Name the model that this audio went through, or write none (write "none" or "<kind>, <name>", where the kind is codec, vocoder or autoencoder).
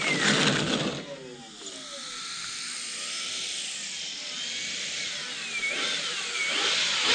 none